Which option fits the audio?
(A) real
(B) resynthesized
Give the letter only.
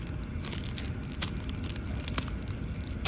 A